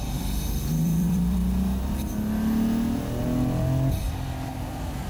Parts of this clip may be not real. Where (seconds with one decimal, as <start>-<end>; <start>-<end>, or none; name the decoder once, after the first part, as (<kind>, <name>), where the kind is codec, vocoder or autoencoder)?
0.0-1.4 (vocoder, BigVGAN v2); 3.9-5.1